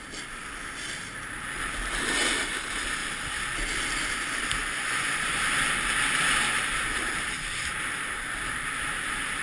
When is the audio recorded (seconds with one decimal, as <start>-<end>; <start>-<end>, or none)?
0.0-4.6; 5.4-9.4